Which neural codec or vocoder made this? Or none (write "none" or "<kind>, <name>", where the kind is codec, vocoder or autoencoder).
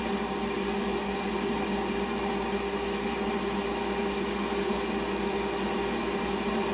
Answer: none